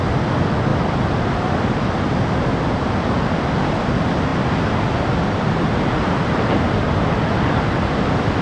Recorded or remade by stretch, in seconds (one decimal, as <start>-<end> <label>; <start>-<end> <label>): 0.0-8.4 recorded